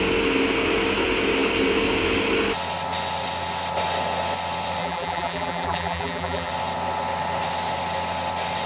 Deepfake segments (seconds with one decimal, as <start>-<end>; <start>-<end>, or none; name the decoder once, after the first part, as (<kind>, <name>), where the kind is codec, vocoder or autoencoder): 4.8-6.5 (vocoder, BigVGAN v2)